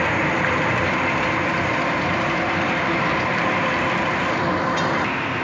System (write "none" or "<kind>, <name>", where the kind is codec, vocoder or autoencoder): none